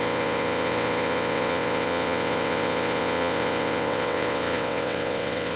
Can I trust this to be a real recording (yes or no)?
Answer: no